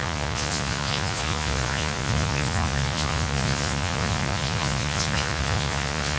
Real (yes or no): no